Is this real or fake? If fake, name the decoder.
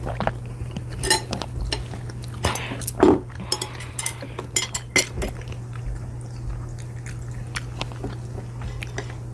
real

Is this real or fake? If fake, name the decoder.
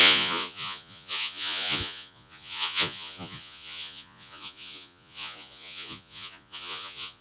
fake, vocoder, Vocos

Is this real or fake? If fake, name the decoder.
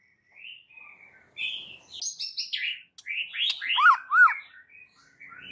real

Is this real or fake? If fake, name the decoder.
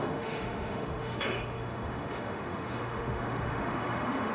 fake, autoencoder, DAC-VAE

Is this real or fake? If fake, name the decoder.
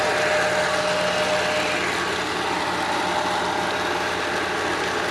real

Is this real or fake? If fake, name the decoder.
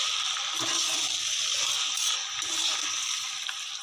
real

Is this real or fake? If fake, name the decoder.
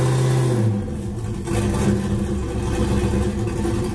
real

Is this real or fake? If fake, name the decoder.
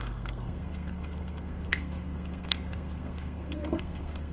fake, codec, SNAC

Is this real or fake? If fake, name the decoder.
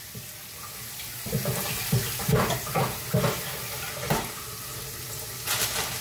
real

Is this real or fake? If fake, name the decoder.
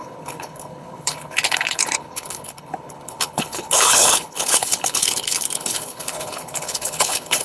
fake, codec, HILCodec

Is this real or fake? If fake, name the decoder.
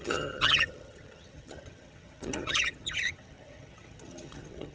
fake, vocoder, HiFi-GAN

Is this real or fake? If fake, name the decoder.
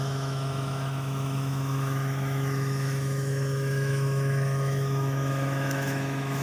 fake, autoencoder, DAC-VAE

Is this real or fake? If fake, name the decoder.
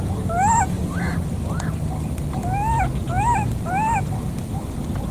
real